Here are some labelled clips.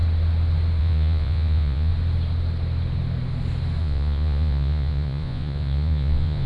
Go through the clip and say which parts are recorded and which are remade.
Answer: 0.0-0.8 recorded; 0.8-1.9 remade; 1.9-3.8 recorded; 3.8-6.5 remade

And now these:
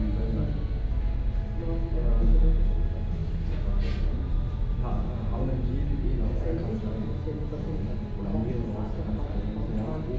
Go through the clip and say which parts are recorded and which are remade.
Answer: 0.0-10.2 recorded